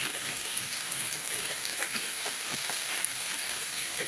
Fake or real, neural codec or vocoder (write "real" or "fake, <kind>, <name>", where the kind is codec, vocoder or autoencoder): fake, codec, DAC